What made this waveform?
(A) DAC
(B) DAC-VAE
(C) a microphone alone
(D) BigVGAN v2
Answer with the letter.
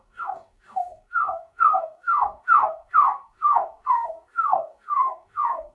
A